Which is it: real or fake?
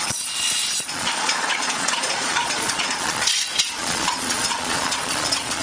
fake